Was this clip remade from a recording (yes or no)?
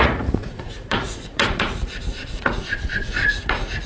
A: yes